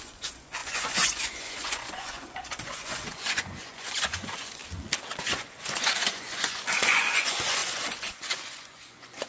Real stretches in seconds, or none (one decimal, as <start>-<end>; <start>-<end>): 4.6-5.2